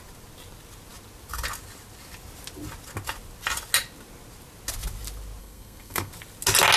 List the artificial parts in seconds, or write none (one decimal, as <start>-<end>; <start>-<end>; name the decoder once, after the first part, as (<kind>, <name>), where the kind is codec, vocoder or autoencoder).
5.4-6.1 (codec, SNAC)